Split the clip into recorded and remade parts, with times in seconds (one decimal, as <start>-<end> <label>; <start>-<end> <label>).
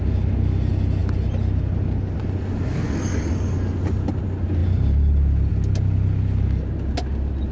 0.0-7.5 recorded